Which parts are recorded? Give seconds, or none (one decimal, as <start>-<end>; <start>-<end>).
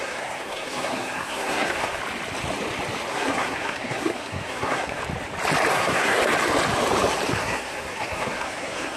2.0-3.1; 5.0-5.7; 6.2-7.4